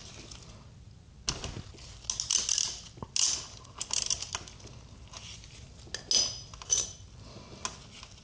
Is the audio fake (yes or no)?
no